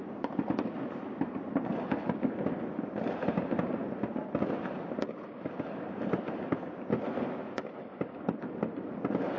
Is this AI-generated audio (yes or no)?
no